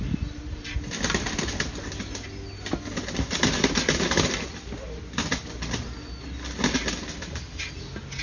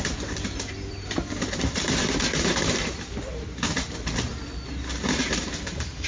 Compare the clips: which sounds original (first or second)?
first